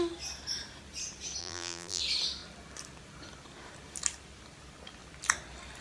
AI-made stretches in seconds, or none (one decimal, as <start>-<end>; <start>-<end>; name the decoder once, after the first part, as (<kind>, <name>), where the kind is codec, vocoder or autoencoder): 1.4-2.0 (vocoder, BigVGAN v2)